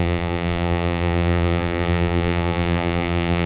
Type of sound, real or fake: fake